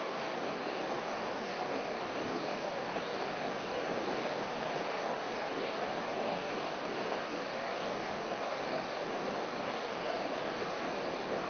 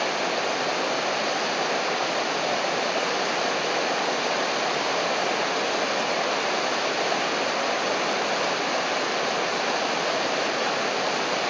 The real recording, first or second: second